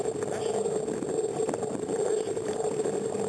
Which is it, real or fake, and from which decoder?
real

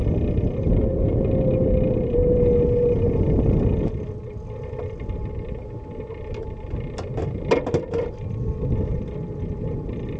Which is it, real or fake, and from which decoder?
real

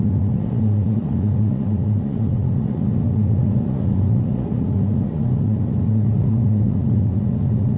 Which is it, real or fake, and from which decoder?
fake, vocoder, Vocos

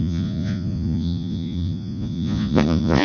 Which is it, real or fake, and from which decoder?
fake, vocoder, Vocos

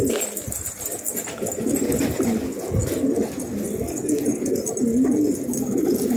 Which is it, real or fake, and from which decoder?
real